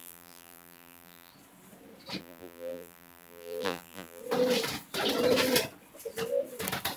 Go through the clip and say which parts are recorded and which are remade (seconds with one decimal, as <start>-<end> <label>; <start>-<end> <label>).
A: 0.0-1.3 remade; 1.3-2.2 recorded; 2.2-4.2 remade; 4.2-7.0 recorded